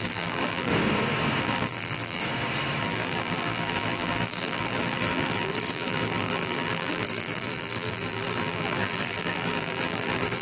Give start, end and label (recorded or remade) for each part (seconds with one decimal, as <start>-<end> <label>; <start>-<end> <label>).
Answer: 0.0-0.7 remade; 0.7-1.4 recorded; 1.4-2.2 remade; 2.2-2.8 recorded; 2.8-10.4 remade